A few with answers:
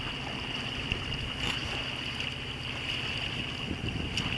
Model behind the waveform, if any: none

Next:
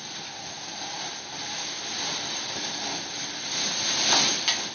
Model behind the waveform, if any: none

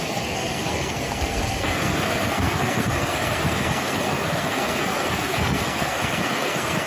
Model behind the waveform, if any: codec, SNAC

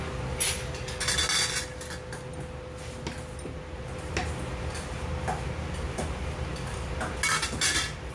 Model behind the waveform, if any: none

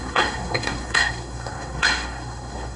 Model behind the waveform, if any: codec, SNAC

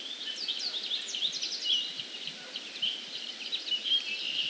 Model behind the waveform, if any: none